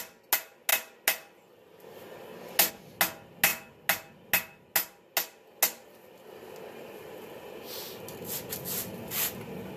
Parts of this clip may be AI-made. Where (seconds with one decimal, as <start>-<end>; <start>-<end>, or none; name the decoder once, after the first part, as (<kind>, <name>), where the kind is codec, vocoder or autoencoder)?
none